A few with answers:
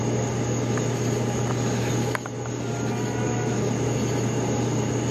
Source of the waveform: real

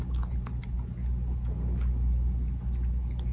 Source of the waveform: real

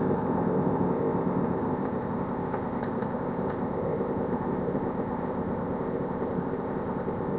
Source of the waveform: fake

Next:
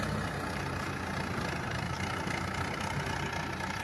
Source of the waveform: real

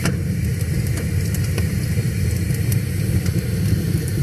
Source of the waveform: real